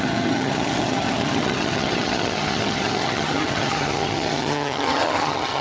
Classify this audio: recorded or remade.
remade